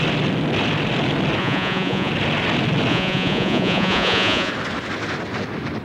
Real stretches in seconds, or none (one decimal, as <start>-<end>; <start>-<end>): 0.0-1.4; 2.1-2.9; 4.5-5.8